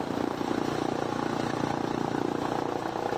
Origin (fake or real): real